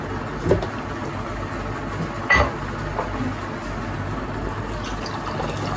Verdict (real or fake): real